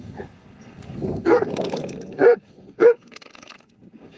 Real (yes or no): no